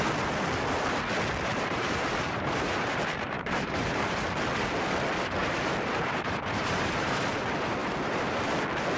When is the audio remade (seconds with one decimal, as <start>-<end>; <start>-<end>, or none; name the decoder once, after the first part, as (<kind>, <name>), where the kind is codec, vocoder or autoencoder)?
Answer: 1.5-4.2 (vocoder, BigVGAN v2); 5.4-7.3; 7.8-8.4